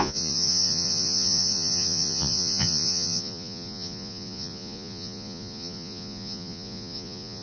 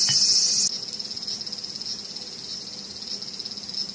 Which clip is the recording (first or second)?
second